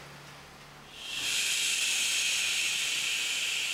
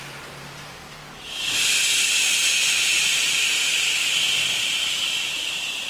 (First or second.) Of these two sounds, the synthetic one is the second